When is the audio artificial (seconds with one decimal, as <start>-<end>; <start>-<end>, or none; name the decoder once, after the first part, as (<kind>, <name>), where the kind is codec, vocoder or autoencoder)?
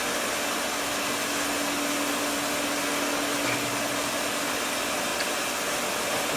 none